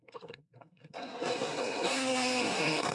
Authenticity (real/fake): fake